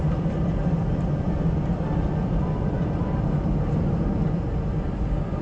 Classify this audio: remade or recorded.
remade